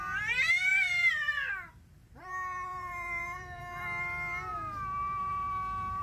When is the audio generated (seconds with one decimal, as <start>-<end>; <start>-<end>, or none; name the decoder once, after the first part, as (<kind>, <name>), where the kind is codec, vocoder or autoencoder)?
0.7-3.6 (vocoder, BigVGAN v2)